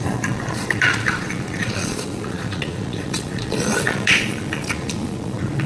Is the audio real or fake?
fake